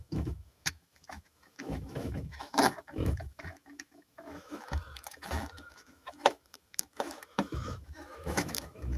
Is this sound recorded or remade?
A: remade